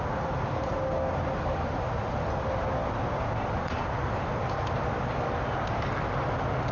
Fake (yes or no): no